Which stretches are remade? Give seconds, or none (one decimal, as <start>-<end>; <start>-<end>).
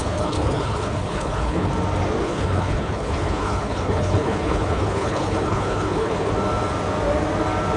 0.0-1.7; 2.2-6.3